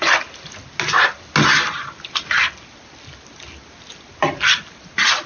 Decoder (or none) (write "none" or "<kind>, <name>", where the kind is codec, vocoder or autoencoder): none